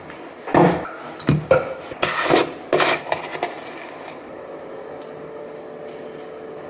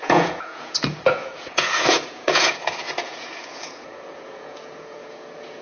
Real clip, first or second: first